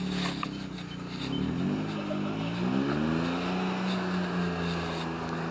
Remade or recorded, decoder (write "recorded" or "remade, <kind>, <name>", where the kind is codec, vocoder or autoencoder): recorded